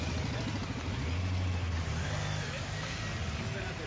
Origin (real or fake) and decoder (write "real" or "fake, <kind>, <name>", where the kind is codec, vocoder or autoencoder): real